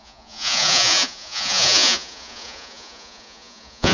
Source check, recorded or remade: remade